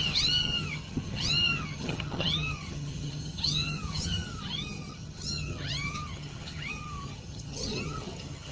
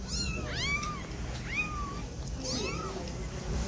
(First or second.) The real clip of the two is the second